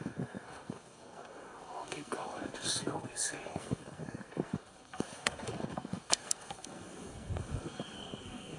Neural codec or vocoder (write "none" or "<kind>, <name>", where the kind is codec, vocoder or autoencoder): codec, SNAC